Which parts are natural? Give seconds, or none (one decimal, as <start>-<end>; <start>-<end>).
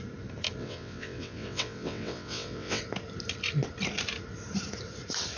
0.0-0.6; 2.8-5.4